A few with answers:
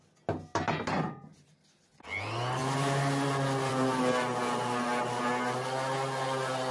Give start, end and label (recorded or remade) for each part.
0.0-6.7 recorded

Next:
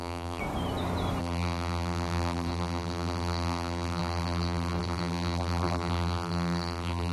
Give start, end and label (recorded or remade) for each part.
0.0-0.4 remade; 0.4-1.2 recorded; 1.2-7.1 remade